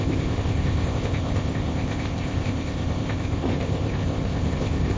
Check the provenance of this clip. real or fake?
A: fake